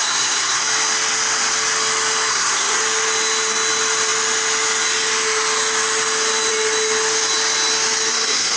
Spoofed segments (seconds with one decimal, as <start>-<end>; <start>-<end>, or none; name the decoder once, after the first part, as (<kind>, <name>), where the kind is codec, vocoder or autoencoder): 0.0-0.6 (codec, SNAC); 2.3-2.8; 8.1-8.6